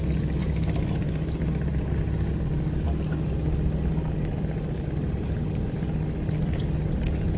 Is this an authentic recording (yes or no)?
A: yes